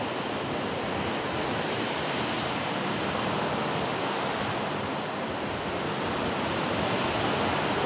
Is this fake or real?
real